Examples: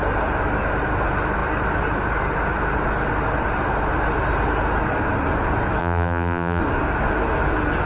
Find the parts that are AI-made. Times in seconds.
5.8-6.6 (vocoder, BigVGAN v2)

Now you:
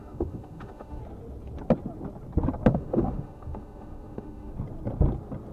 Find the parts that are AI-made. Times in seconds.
0.0-1.0 (autoencoder, DAC-VAE); 2.7-4.5

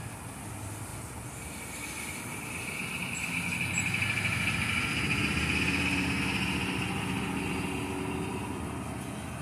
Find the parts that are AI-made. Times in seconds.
none

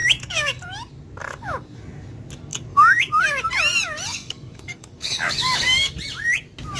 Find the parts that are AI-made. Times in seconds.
0.0-0.6 (codec, DAC); 1.2-1.8; 2.5-3.2; 4.1-5.9

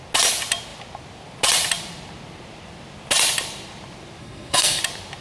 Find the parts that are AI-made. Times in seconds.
4.2-4.8 (codec, SNAC)

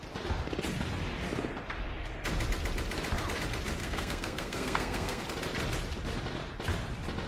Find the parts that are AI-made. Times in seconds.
3.8-5.2 (codec, SNAC)